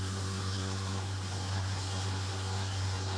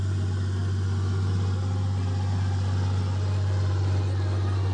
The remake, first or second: first